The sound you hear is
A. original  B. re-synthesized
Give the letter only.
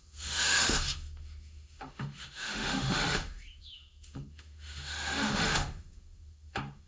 B